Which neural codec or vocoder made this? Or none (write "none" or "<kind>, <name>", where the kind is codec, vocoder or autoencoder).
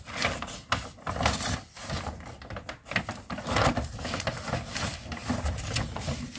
none